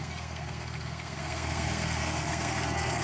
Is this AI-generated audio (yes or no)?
yes